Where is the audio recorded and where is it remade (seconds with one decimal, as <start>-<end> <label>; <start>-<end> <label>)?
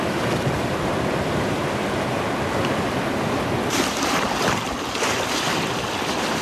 0.0-1.8 remade; 1.8-2.4 recorded; 2.4-6.4 remade